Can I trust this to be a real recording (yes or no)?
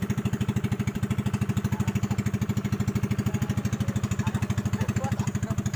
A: no